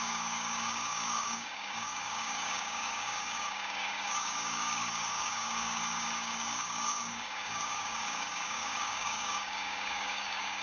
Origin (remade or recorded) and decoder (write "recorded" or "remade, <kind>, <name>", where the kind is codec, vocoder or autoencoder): remade, codec, DAC